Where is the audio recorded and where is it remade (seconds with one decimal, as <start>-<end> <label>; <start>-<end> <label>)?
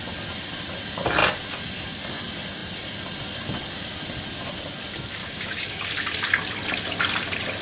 0.0-5.2 recorded; 5.2-5.9 remade; 5.9-7.6 recorded